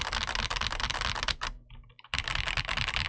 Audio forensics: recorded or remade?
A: recorded